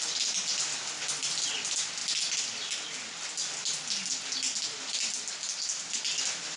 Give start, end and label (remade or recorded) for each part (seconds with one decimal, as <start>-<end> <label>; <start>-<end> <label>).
0.0-6.6 recorded